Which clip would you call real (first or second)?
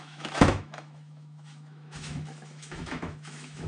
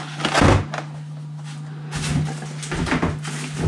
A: second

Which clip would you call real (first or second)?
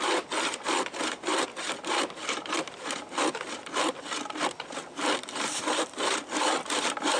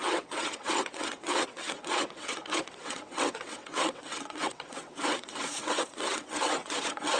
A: first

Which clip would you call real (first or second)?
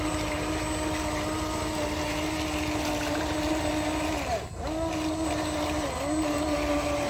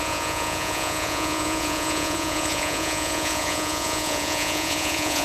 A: first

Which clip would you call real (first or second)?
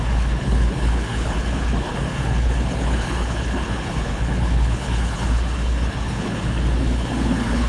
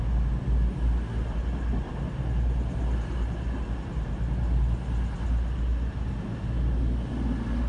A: second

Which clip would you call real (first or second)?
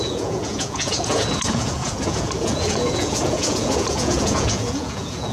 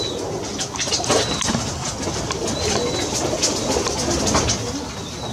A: second